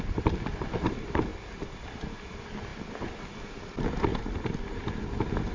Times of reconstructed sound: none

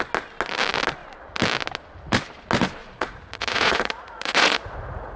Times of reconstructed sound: 2.8-5.2 (vocoder, Vocos)

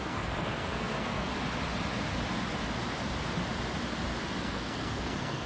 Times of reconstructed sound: 0.0-1.3 (codec, SNAC); 4.4-5.5